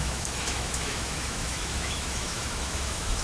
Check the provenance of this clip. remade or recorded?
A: remade